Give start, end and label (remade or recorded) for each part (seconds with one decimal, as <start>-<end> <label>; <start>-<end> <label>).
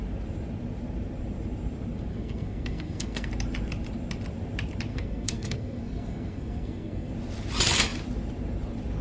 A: 0.0-2.1 recorded; 2.1-3.3 remade; 3.3-4.9 recorded; 4.9-7.1 remade; 7.1-9.0 recorded